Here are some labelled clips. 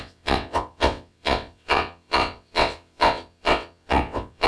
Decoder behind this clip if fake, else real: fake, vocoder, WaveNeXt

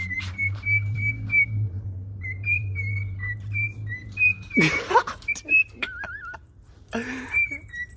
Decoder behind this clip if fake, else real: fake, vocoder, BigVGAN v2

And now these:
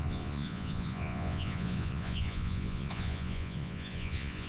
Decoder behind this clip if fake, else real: fake, vocoder, Vocos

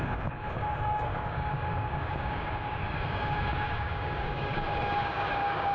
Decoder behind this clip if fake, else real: fake, codec, DAC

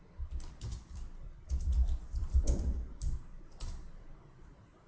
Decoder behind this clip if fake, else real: fake, vocoder, BigVGAN v2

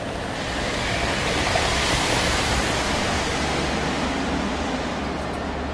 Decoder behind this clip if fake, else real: real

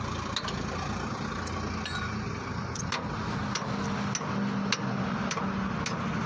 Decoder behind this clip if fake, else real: real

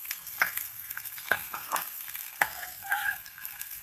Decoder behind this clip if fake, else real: fake, codec, SNAC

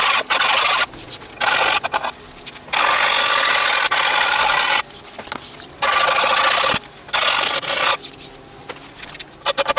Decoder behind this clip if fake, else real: real